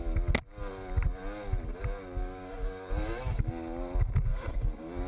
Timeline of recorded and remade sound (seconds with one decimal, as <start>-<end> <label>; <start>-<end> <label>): 0.0-2.2 recorded; 2.2-3.5 remade; 3.5-4.3 recorded; 4.3-5.1 remade